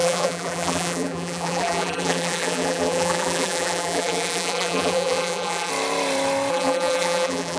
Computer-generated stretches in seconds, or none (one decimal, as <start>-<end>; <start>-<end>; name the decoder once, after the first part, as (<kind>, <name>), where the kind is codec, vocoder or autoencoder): 0.0-5.7 (vocoder, BigVGAN v2); 6.5-7.6